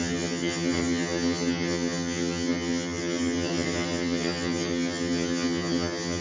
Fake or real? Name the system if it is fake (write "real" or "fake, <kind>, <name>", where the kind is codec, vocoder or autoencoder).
fake, vocoder, HiFi-GAN